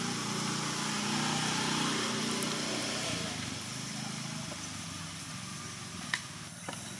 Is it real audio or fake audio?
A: real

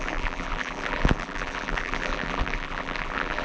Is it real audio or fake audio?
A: fake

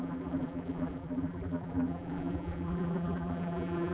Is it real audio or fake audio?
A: fake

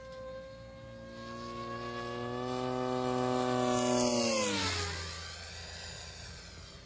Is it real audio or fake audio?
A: real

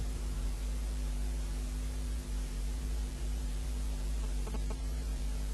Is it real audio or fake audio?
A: fake